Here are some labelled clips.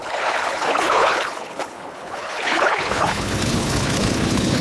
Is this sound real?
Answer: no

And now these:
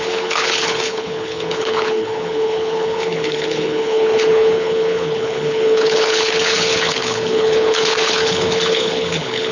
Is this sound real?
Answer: no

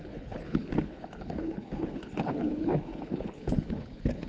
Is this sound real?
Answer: no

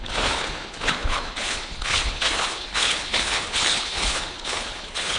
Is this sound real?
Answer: no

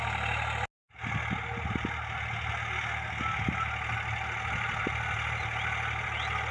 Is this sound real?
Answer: yes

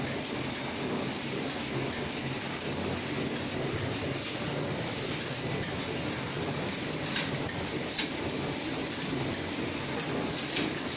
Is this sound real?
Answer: yes